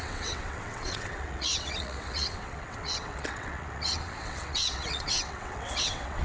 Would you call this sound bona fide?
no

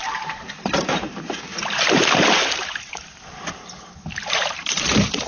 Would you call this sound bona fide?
no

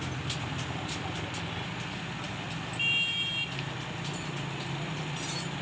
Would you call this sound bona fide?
yes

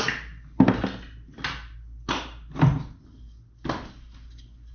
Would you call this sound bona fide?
yes